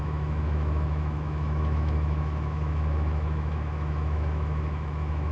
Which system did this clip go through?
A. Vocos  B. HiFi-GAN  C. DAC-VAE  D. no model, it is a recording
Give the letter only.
C